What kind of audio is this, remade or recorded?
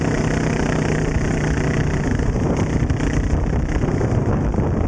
recorded